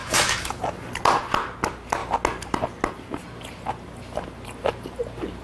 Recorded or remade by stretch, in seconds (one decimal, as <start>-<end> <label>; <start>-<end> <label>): 0.0-0.6 remade; 0.6-5.4 recorded